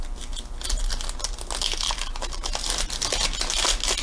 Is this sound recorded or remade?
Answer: recorded